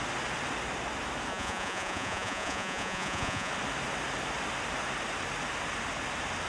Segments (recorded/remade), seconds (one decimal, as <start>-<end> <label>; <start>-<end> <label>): 0.0-1.3 recorded; 1.3-3.5 remade; 3.5-6.5 recorded